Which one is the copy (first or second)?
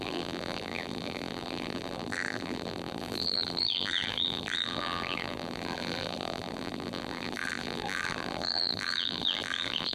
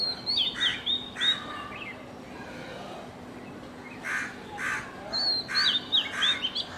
first